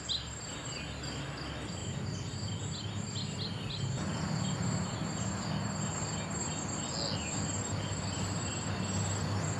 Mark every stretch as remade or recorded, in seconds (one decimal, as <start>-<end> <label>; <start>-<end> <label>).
0.0-9.6 recorded

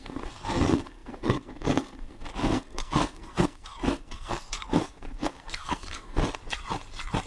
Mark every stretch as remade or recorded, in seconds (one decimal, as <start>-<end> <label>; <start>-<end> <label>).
0.0-6.2 remade; 6.2-7.3 recorded

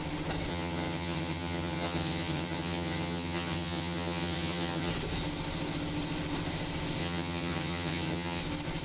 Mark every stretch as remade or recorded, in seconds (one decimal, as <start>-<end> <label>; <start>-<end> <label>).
0.0-0.5 recorded; 0.5-4.9 remade; 4.9-7.0 recorded; 7.0-8.4 remade; 8.4-8.8 recorded

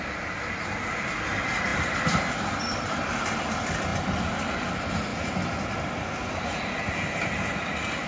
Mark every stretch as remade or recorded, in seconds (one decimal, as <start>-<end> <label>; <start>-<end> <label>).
0.0-8.1 recorded